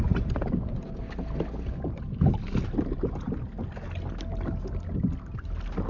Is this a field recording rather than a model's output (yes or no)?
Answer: yes